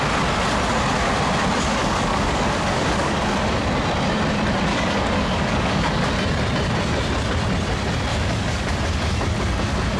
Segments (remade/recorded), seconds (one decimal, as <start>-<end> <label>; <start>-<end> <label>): 0.0-1.8 recorded; 1.8-3.2 remade; 3.2-4.7 recorded; 4.7-6.1 remade; 6.1-8.1 recorded; 8.1-8.7 remade; 8.7-10.0 recorded